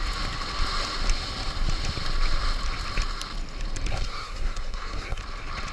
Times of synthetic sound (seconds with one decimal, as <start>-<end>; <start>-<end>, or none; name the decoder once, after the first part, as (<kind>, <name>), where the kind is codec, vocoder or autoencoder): 3.9-5.2 (codec, SNAC)